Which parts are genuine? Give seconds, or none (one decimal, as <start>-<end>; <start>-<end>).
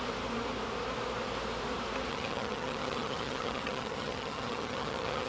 0.0-2.1